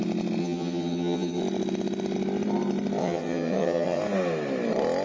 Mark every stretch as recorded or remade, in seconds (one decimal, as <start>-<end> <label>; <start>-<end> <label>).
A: 0.0-0.4 recorded; 0.4-1.4 remade; 1.4-3.0 recorded; 3.0-4.0 remade; 4.0-5.0 recorded